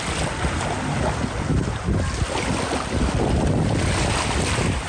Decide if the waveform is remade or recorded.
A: recorded